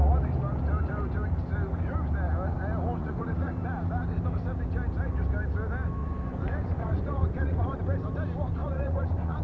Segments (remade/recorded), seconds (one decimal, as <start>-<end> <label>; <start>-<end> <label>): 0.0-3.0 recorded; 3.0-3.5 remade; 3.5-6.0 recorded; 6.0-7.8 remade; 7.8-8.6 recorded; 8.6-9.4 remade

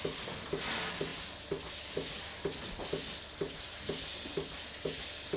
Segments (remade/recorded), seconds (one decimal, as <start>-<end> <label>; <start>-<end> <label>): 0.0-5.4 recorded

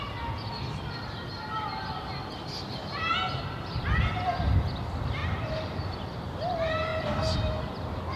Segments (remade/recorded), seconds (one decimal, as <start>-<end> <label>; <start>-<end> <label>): 0.0-5.2 recorded; 5.2-6.2 remade; 6.2-8.2 recorded